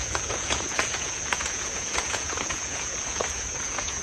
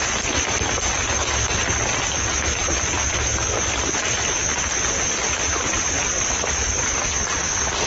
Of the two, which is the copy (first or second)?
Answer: first